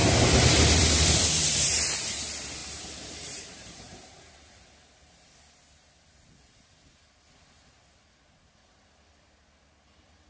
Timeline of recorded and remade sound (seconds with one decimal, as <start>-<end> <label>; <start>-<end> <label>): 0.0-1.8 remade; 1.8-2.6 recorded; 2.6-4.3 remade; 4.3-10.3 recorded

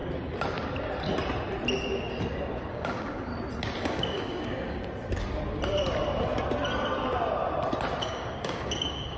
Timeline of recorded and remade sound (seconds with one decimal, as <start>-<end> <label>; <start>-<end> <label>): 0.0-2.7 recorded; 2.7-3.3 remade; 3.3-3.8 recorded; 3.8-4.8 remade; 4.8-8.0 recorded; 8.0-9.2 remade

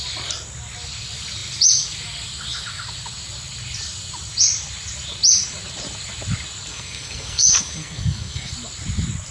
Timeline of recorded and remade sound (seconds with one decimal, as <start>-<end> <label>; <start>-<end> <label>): 0.0-6.7 recorded; 6.7-8.5 remade; 8.5-9.3 recorded

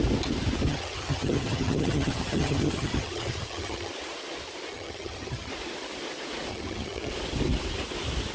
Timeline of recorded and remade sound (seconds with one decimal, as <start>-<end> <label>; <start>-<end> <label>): 0.0-0.7 recorded; 0.7-3.9 remade; 3.9-4.7 recorded; 4.7-5.5 remade; 5.5-6.5 recorded; 6.5-7.1 remade; 7.1-8.3 recorded